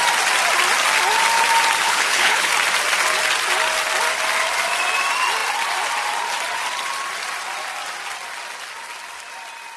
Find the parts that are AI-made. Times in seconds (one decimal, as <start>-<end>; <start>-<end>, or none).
1.8-2.5